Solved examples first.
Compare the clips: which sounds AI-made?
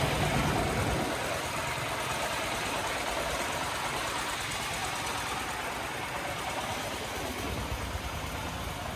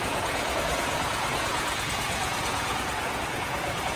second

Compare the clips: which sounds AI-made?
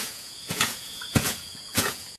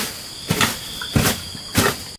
first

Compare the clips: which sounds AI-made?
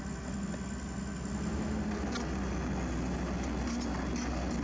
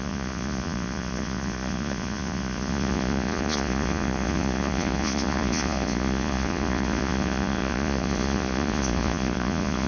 second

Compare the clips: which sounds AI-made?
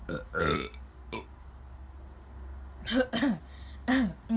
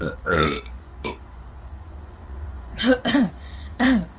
second